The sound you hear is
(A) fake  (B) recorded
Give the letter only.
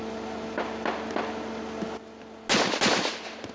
B